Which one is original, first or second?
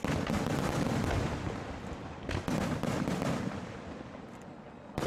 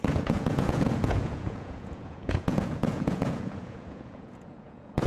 first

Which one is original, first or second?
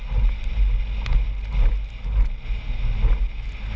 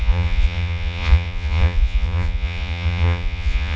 first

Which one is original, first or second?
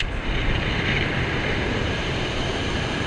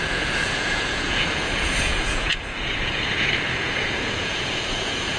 first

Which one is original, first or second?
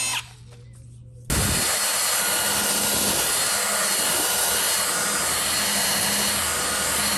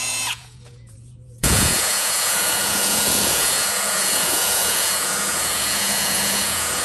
first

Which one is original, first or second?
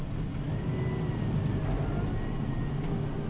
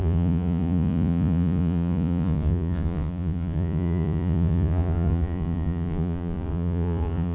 first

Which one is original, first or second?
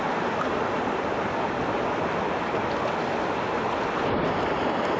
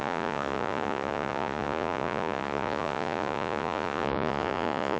first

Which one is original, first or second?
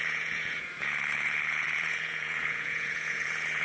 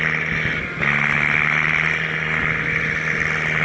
second